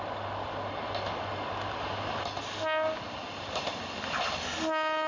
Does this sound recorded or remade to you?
recorded